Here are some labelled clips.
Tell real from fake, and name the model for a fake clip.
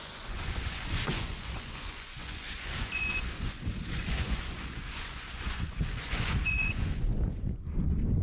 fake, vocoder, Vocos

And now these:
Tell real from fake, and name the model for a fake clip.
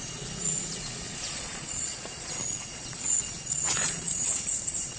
fake, vocoder, Vocos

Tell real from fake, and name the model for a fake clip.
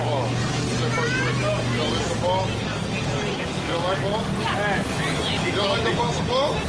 real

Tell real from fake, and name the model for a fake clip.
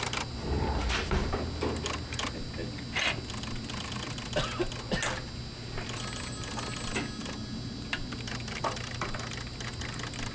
real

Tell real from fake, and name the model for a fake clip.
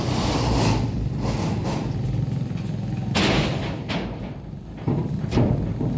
real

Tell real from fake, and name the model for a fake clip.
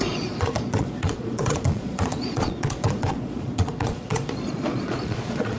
fake, vocoder, Vocos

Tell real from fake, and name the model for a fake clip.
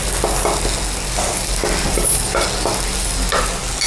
real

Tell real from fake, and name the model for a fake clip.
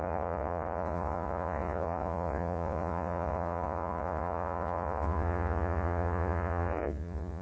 fake, vocoder, Vocos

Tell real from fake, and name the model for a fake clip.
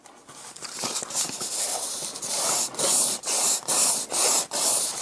real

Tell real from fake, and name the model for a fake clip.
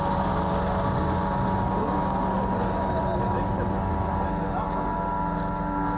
real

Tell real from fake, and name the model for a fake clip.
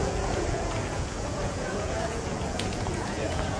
fake, vocoder, Vocos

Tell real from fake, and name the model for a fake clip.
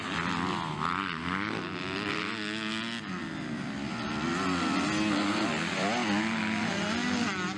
real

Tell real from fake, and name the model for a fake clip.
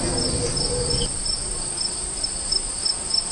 real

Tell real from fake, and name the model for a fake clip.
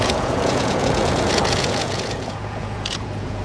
fake, vocoder, Vocos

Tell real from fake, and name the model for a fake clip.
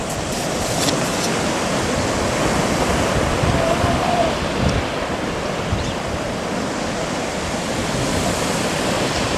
real